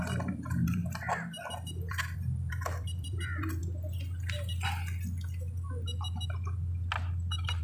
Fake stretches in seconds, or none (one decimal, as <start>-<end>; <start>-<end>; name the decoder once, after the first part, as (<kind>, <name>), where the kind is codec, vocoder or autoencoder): 0.0-0.8 (vocoder, BigVGAN v2); 1.9-3.6